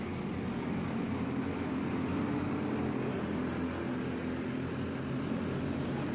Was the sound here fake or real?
real